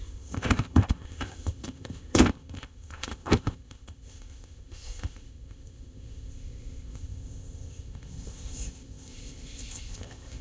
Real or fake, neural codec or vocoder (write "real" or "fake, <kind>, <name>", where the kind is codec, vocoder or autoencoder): fake, codec, ZipCodec